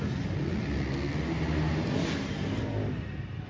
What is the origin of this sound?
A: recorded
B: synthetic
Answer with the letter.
A